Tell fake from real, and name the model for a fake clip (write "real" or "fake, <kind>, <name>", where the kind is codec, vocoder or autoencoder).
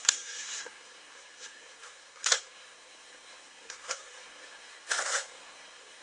fake, codec, SNAC